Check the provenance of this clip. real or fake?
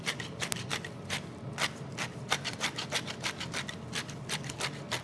real